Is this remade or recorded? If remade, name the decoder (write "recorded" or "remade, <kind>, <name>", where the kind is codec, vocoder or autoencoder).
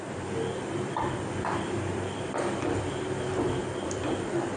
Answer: remade, vocoder, BigVGAN v2